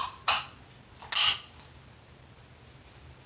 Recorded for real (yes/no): yes